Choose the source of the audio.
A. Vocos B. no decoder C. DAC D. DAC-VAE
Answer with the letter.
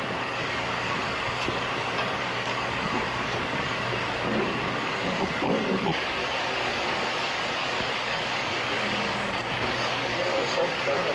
C